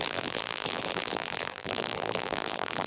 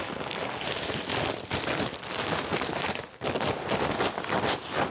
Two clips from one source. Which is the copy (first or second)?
first